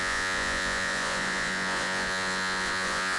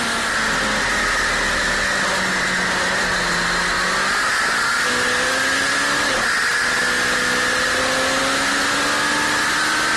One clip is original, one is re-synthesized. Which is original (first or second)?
second